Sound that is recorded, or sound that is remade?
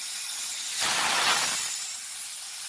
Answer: recorded